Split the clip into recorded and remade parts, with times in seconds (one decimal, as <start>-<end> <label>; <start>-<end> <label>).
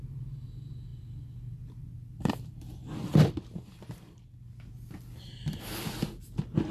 0.0-6.7 recorded